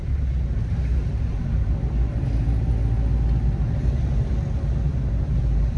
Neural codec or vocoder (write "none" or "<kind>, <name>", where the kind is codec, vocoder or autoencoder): none